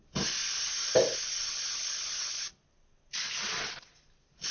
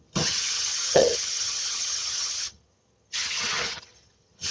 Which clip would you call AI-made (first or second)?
second